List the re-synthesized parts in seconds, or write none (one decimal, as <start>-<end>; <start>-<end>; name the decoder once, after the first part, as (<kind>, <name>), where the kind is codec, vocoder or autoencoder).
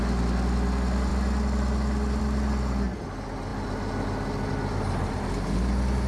none